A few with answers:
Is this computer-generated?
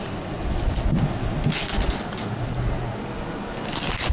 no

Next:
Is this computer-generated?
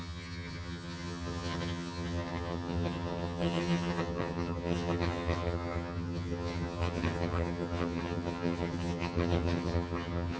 yes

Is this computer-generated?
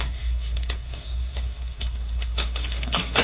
yes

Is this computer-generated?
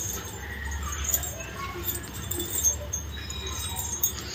yes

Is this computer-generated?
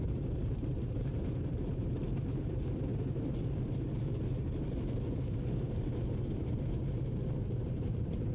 yes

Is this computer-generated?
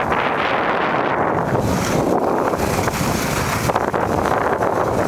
no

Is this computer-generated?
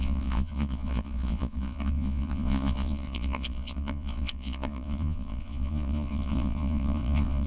yes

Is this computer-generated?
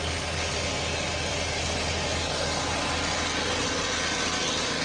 no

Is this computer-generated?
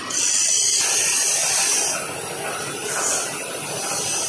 no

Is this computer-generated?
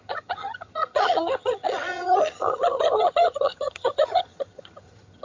yes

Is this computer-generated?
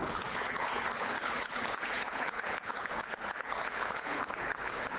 yes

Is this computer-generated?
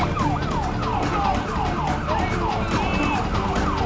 no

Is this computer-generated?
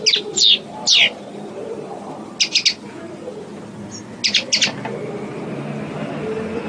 no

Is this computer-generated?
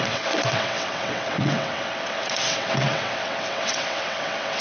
yes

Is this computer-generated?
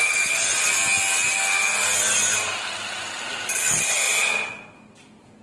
no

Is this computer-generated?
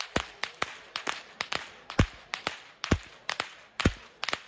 no